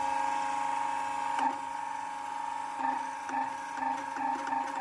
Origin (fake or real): real